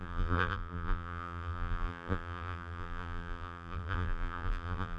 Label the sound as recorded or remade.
remade